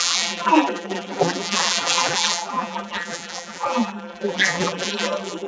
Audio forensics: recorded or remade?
remade